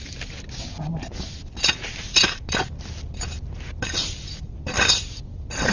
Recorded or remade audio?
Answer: recorded